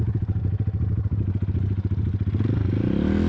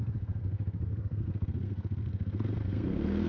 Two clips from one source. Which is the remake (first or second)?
second